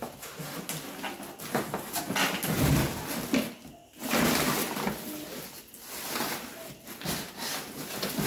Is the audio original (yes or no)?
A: yes